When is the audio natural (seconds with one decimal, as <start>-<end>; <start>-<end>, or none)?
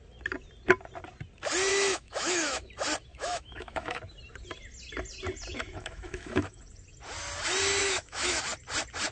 0.0-1.7; 2.7-3.1; 4.0-5.5; 6.6-7.8; 8.4-9.1